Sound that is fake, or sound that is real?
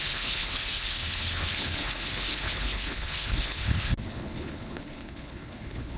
fake